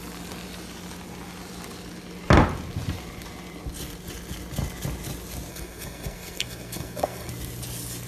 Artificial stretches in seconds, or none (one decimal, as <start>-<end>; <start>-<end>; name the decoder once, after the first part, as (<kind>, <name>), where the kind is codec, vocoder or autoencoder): 5.5-7.3 (codec, SNAC)